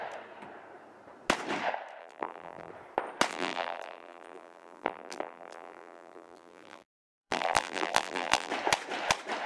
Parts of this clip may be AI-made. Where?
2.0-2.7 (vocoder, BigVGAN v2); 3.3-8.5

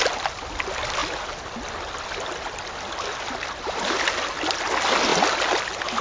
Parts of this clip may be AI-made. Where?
none

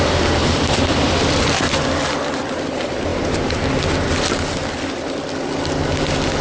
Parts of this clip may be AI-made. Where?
0.4-2.5 (vocoder, BigVGAN v2)

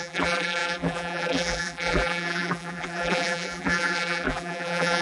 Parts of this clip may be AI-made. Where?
0.0-5.0 (vocoder, BigVGAN v2)